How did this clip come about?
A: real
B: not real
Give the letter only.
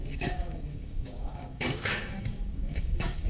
B